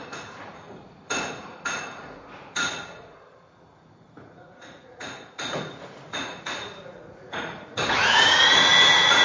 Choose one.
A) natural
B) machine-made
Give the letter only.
B